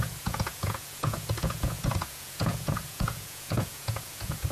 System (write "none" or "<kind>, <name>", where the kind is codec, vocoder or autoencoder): vocoder, Vocos